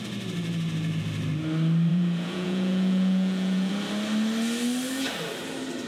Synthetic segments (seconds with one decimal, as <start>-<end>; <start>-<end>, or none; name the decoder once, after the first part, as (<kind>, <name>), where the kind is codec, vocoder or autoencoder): 1.9-3.7 (vocoder, Vocos)